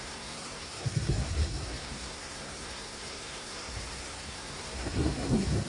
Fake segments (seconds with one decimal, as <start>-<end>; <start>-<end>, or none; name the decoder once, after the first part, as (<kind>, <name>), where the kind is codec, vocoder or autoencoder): 0.0-5.7 (codec, SNAC)